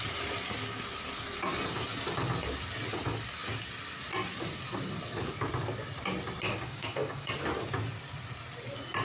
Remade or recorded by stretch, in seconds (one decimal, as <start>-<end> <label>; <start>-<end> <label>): 0.0-6.5 recorded; 6.5-7.3 remade; 7.3-9.0 recorded